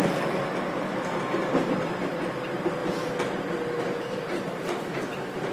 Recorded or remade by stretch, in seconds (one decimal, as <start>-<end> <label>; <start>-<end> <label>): 0.0-5.5 recorded